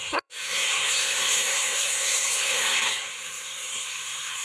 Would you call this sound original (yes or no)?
no